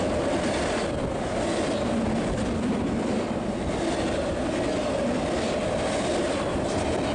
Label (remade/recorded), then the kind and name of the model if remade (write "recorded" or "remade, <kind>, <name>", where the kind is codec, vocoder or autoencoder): recorded